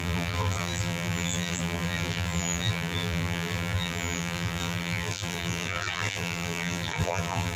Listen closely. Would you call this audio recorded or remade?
remade